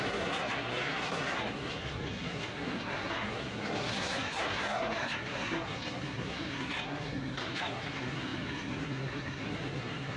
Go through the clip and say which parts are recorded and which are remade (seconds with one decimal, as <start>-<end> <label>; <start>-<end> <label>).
0.0-10.2 remade